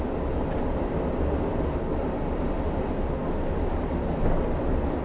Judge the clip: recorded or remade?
recorded